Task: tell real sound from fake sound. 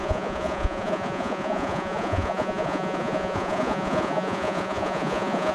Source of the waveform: fake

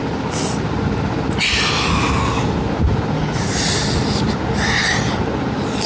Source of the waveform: real